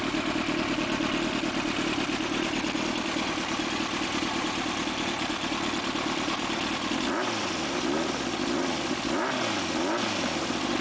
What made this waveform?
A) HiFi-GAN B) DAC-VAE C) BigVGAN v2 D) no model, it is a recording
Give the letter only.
D